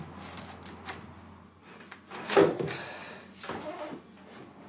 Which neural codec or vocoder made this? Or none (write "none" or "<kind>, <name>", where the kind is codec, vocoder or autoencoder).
none